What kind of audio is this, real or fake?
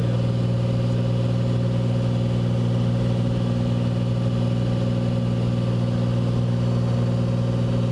real